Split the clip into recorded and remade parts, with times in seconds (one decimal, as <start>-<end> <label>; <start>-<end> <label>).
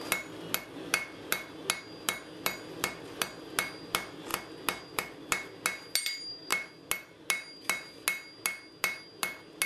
0.0-9.7 recorded